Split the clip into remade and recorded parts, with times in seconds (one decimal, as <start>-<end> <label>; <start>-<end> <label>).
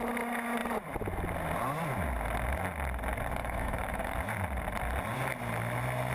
0.0-3.4 recorded; 3.4-4.2 remade; 4.2-6.1 recorded